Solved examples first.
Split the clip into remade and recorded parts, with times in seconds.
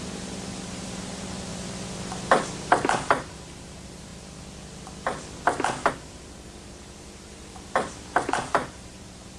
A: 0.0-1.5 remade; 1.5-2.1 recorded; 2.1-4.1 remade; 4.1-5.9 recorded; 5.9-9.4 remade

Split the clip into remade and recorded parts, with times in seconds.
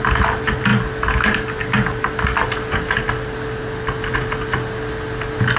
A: 0.0-5.6 recorded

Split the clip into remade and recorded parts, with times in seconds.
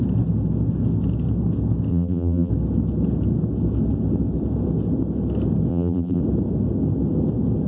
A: 0.0-1.9 recorded; 1.9-2.5 remade; 2.5-5.7 recorded; 5.7-6.2 remade; 6.2-7.7 recorded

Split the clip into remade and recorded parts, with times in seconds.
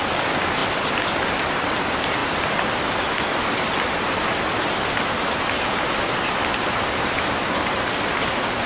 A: 0.0-0.6 recorded; 0.6-1.3 remade; 1.3-8.7 recorded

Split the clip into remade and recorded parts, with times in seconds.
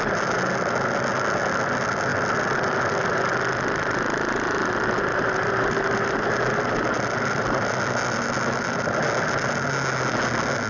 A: 0.0-10.7 recorded